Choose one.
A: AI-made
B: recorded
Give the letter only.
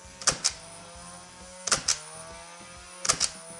B